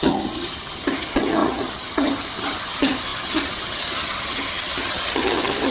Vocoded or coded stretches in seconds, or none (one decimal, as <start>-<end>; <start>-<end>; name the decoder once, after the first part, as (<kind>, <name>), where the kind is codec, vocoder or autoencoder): 0.0-5.7 (vocoder, HiFi-GAN)